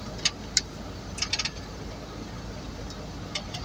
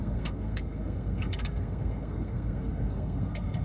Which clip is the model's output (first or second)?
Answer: second